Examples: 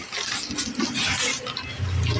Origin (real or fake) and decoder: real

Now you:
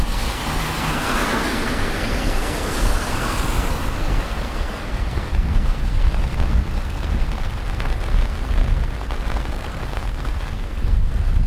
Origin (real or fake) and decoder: fake, codec, SNAC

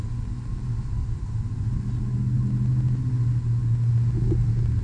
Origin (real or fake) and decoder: real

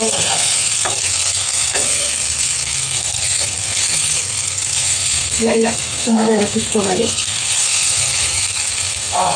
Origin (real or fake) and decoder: fake, codec, SNAC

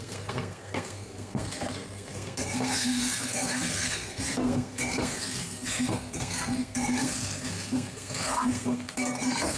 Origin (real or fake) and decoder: fake, codec, SNAC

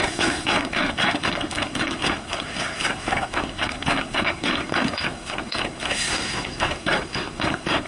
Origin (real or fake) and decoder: fake, codec, SNAC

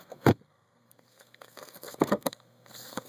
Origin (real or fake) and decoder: fake, codec, SNAC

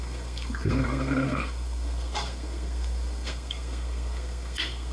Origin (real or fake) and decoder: fake, codec, SNAC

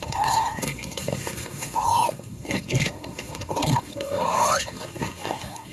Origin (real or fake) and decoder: fake, codec, SNAC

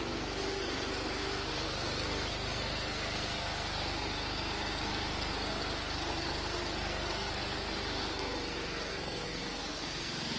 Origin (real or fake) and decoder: fake, codec, SNAC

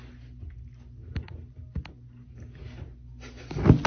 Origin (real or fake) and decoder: real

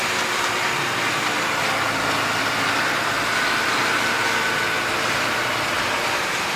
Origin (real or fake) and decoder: real